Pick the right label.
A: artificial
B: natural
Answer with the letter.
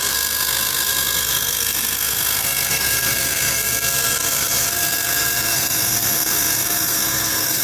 A